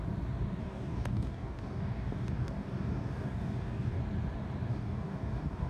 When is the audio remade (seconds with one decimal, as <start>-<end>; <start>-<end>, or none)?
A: 0.6-4.0; 4.7-5.7